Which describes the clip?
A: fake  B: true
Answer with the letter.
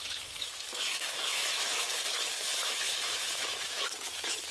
A